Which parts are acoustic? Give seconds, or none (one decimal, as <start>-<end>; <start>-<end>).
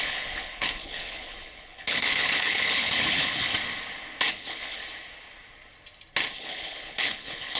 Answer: 3.5-4.3; 4.8-6.4